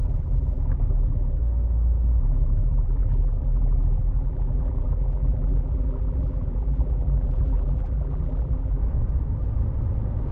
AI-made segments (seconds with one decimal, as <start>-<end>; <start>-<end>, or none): 0.0-1.4; 2.2-8.8